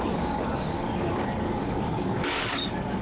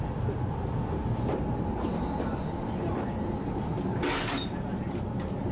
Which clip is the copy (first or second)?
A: first